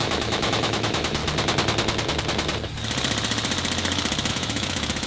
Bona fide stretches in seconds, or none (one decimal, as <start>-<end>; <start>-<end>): 1.2-4.3